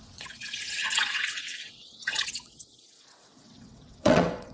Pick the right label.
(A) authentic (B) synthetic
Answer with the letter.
B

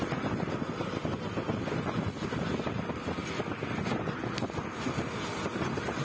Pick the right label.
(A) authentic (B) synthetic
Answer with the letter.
A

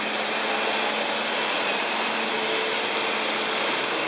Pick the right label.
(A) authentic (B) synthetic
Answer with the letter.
A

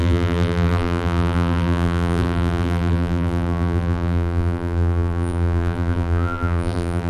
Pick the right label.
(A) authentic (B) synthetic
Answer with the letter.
B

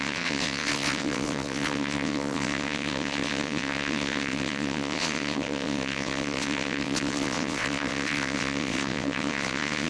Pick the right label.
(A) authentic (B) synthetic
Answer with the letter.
B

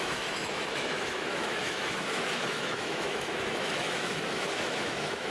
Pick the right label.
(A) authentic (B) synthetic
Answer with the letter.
B